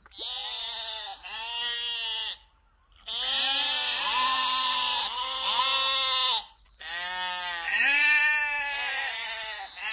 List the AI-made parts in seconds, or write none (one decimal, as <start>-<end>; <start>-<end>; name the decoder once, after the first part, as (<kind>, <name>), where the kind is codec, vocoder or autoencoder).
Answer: 2.2-5.6 (vocoder, BigVGAN v2)